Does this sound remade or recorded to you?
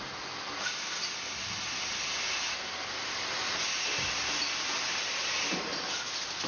recorded